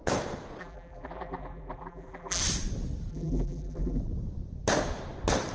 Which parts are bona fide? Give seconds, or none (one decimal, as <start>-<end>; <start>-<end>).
0.0-0.6; 2.4-3.1; 4.0-5.5